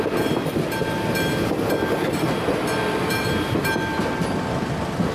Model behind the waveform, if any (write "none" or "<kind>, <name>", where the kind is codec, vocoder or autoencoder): none